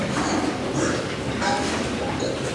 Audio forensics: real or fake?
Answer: real